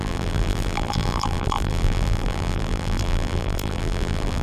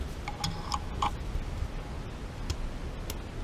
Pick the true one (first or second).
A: second